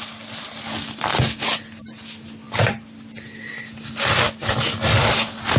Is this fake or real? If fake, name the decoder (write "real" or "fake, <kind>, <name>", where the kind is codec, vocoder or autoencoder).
real